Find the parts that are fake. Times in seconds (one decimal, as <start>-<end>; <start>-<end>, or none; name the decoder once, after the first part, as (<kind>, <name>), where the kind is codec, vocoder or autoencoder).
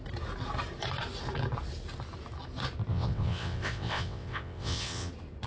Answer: 2.9-5.1 (vocoder, WaveNeXt)